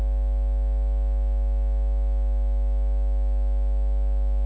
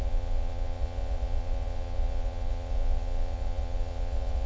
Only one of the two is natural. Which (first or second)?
first